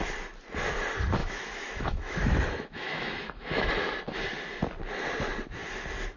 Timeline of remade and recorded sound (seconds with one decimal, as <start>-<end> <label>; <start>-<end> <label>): 0.0-1.2 recorded; 1.2-3.7 remade; 3.7-6.2 recorded